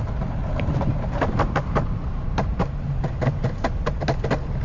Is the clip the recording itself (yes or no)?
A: yes